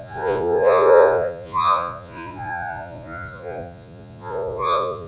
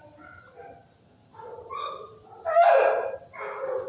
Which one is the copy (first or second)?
first